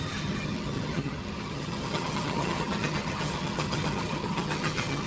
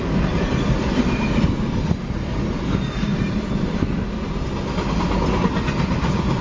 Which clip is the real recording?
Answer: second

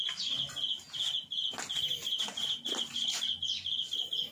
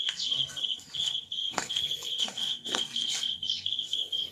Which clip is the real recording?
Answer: first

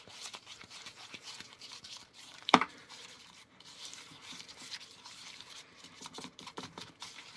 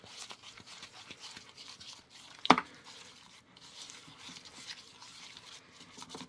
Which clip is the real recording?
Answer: second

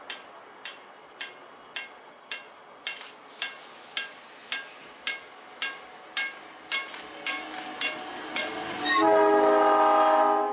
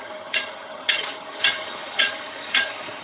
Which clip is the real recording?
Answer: first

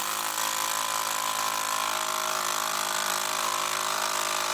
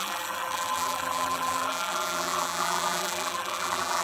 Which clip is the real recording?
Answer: first